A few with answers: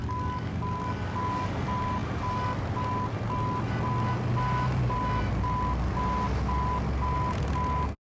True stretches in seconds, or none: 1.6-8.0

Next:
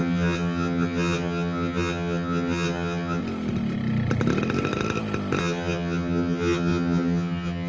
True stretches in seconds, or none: 3.2-5.4

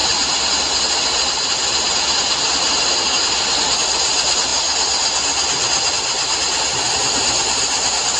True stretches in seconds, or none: 0.0-8.2

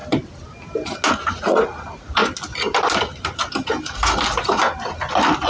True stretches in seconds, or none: 0.0-1.1; 2.2-5.5

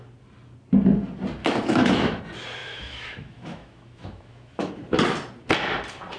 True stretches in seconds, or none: 0.0-1.4; 2.2-2.6; 4.7-6.2

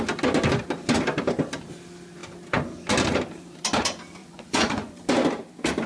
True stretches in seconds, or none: 0.0-4.2; 5.0-5.9